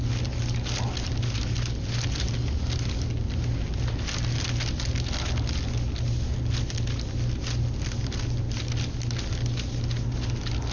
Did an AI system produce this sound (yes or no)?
no